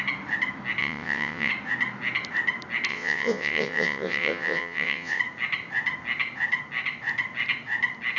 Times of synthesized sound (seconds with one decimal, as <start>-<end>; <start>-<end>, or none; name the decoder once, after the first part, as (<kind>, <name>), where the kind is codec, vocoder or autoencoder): 0.8-1.5 (vocoder, WaveNeXt); 2.9-5.2